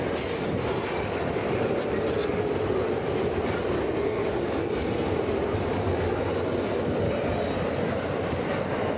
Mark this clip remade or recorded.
recorded